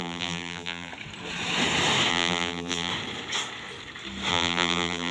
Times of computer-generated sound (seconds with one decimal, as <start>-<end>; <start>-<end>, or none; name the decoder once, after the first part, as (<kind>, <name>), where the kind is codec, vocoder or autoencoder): 0.0-0.9 (vocoder, BigVGAN v2); 2.1-2.9; 4.3-5.1